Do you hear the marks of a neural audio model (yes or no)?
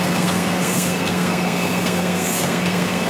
yes